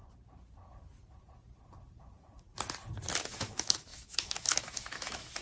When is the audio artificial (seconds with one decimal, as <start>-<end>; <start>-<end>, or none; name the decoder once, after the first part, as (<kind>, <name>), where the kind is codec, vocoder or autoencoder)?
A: 3.2-5.4 (autoencoder, DAC-VAE)